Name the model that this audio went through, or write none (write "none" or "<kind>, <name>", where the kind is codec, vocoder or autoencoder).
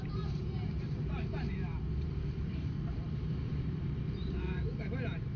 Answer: vocoder, BigVGAN v2